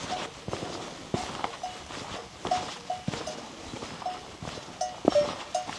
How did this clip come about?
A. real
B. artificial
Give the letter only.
A